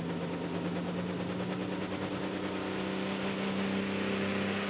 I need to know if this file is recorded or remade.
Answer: recorded